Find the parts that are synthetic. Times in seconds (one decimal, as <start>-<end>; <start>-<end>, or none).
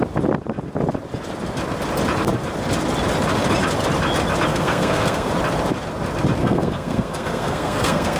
4.5-5.3; 6.4-8.2